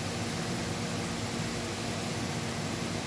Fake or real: real